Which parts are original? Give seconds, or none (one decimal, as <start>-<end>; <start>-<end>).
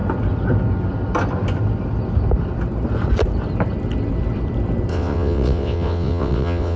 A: 0.0-4.9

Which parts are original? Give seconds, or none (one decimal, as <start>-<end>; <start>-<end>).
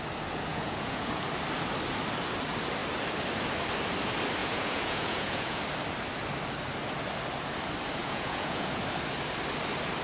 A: 0.0-0.5; 1.2-4.4; 5.6-8.0; 8.8-10.0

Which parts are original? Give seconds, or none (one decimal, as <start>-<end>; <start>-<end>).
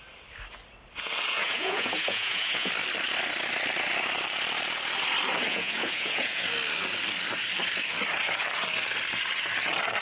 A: 0.0-1.4; 2.7-5.5; 6.5-10.0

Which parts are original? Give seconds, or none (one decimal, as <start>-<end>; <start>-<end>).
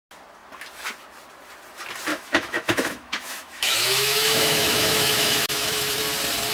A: 0.0-2.1; 6.0-6.5